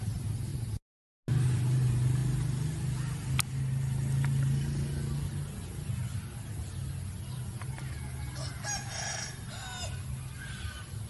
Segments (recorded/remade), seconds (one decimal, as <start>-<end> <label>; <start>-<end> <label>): 0.0-11.1 recorded